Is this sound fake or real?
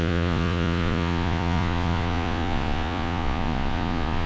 fake